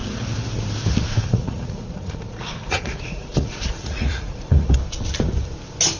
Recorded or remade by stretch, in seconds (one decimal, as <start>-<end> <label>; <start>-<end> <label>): 0.0-1.2 recorded; 1.2-4.8 remade; 4.8-6.0 recorded